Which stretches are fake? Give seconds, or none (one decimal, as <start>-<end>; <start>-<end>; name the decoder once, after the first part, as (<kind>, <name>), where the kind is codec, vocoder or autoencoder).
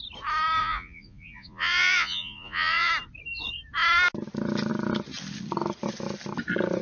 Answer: 0.6-2.9 (vocoder, Vocos)